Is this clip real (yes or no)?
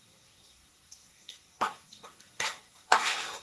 no